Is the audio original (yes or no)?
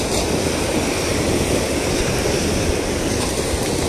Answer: yes